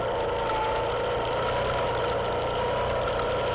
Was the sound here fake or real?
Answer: real